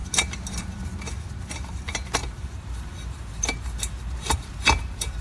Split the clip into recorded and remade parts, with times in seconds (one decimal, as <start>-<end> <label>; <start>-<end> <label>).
0.0-2.2 recorded; 2.2-5.2 remade